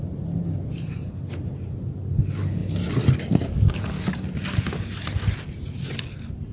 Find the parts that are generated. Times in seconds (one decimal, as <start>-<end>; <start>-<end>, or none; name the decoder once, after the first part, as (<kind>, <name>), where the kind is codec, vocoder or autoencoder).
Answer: none